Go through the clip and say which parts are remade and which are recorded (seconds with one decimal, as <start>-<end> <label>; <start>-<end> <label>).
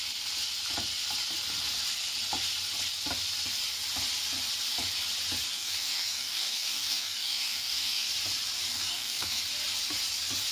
0.0-5.5 recorded; 5.5-8.1 remade; 8.1-8.7 recorded; 8.7-9.4 remade; 9.4-10.5 recorded